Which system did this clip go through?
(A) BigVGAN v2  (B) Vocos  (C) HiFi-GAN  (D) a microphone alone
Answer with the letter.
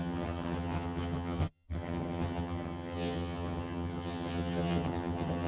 C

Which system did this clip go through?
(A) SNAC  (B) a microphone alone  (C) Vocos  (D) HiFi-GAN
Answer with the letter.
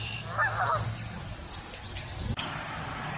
B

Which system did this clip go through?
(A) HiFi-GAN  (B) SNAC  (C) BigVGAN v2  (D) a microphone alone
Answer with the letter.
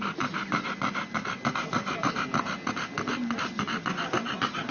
D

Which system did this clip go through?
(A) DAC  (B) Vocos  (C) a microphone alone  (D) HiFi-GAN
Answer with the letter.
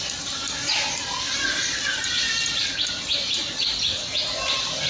C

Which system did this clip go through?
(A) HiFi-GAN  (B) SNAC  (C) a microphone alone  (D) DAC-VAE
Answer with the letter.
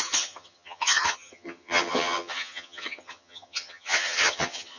A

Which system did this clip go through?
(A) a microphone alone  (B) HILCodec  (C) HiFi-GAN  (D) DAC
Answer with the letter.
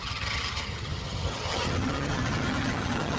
C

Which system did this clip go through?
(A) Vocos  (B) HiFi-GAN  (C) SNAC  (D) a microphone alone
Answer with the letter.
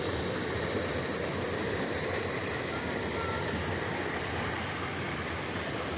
D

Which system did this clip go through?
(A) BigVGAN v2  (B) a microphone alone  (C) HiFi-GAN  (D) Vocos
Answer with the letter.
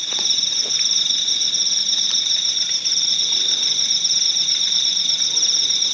B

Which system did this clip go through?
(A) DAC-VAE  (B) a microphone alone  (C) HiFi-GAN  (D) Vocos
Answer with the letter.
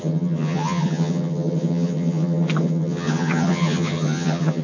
C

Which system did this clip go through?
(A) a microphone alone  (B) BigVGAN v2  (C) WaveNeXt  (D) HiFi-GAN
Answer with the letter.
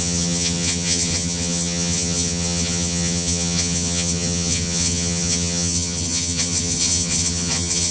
D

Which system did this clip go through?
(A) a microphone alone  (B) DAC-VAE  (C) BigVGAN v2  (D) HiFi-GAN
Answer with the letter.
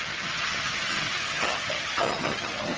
D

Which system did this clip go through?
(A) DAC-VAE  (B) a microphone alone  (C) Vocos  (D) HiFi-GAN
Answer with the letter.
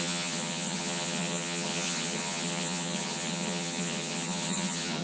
D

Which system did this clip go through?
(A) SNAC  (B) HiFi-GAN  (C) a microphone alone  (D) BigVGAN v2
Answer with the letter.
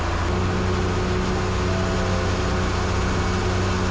C